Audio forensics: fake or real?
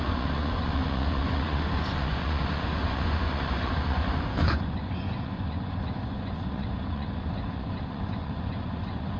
fake